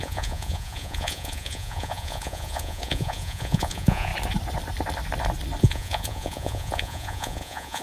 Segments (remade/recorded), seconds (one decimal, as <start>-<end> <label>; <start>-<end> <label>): 0.0-4.1 remade; 4.1-5.6 recorded; 5.6-7.8 remade